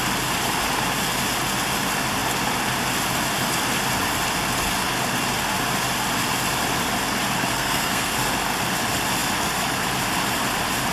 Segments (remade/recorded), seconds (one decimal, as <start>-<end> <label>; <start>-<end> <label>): 0.0-7.5 recorded; 7.5-8.1 remade; 8.1-10.9 recorded